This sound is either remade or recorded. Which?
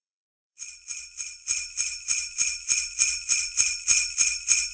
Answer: remade